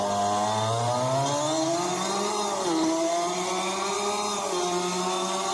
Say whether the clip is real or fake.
real